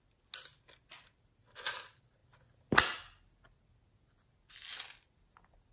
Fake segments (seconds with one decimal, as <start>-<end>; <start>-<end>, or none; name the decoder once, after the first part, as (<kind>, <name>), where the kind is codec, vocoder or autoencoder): none